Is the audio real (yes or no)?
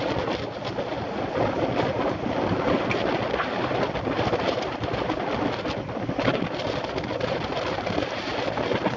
yes